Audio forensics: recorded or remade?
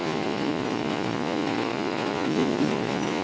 remade